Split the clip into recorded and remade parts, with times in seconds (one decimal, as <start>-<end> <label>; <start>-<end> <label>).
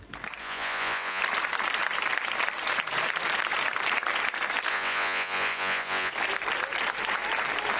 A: 0.0-0.4 recorded; 0.4-1.2 remade; 1.2-4.7 recorded; 4.7-6.1 remade; 6.1-7.8 recorded